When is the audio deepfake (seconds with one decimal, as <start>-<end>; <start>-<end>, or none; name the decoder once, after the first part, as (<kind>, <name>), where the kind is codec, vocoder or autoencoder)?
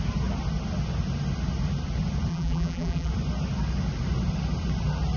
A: 2.3-3.1 (vocoder, BigVGAN v2)